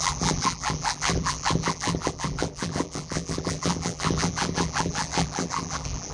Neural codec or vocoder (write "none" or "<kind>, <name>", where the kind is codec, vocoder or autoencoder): vocoder, BigVGAN v2